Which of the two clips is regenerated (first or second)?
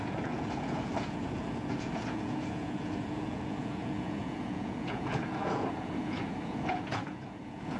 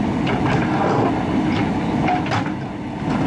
first